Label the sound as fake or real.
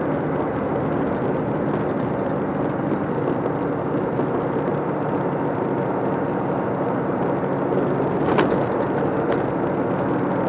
real